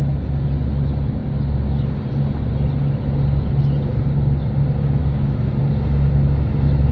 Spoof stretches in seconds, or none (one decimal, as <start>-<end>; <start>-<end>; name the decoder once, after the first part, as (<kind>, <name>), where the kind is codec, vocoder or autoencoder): 5.0-5.6 (autoencoder, DAC-VAE)